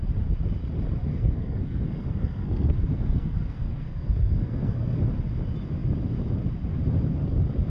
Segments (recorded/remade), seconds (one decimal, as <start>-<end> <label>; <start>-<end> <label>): 0.0-1.1 recorded; 1.1-5.0 remade; 5.0-7.7 recorded